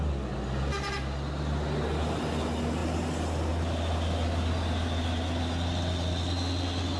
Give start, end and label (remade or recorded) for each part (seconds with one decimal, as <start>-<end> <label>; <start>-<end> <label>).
0.0-7.0 recorded